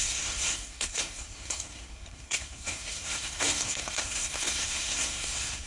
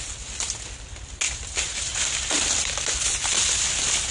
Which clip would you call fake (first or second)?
first